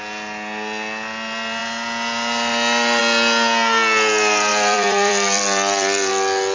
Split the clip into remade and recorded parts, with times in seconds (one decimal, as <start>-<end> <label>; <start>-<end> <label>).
0.0-4.5 recorded; 4.5-6.1 remade; 6.1-6.5 recorded